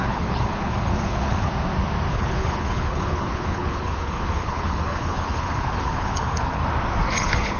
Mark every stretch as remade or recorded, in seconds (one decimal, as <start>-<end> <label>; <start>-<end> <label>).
0.0-1.5 remade; 1.5-2.1 recorded; 2.1-6.6 remade; 6.6-7.1 recorded; 7.1-7.6 remade

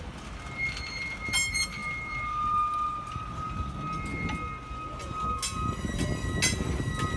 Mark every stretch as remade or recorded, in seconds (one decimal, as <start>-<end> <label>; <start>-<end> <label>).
0.0-7.2 recorded

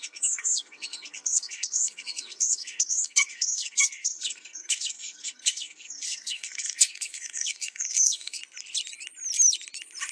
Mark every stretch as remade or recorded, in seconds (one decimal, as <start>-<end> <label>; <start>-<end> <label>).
0.0-8.4 remade; 8.4-10.1 recorded

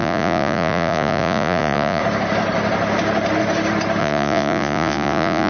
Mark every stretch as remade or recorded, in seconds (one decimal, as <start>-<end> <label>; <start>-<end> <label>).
0.0-2.0 remade; 2.0-4.0 recorded; 4.0-5.5 remade

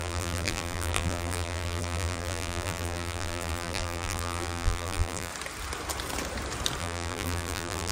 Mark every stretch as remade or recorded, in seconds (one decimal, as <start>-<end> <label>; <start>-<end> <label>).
0.0-5.3 remade; 5.3-6.8 recorded; 6.8-7.9 remade

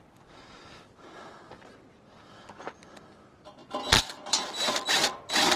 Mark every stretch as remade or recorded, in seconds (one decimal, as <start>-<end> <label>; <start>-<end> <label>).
0.0-5.6 recorded

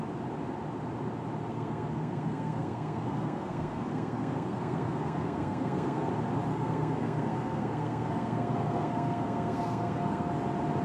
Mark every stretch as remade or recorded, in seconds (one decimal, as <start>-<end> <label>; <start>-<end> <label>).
0.0-1.5 recorded; 1.5-6.1 remade; 6.1-6.5 recorded; 6.5-10.3 remade; 10.3-10.8 recorded